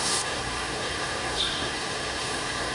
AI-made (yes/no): yes